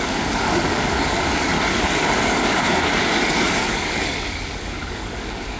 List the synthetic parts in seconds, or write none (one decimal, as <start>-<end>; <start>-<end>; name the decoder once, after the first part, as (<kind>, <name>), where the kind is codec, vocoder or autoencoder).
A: 0.0-5.6 (codec, DAC)